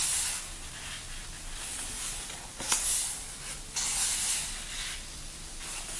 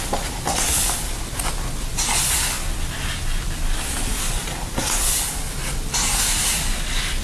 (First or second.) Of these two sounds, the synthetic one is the second